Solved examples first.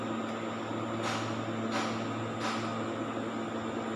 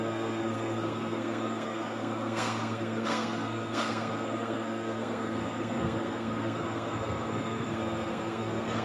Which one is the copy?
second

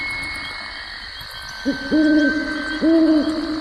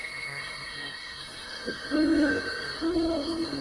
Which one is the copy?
second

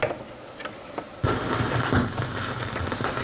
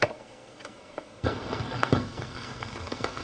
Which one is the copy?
second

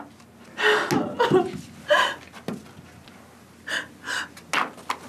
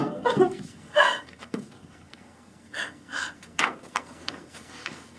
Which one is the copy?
second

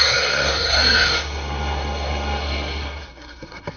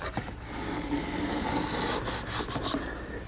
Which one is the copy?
first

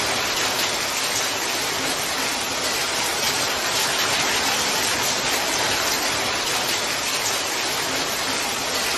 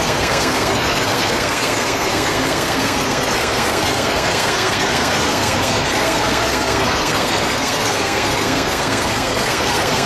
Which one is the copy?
second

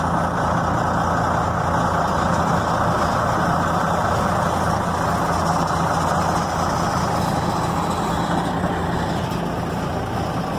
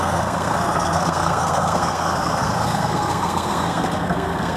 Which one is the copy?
second